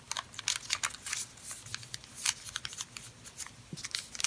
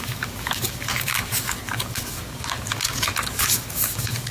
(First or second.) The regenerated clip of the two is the second